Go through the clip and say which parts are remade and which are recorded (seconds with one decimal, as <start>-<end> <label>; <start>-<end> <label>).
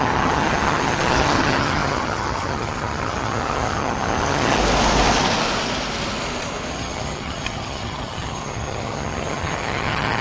0.0-4.6 remade; 4.6-6.7 recorded; 6.7-10.2 remade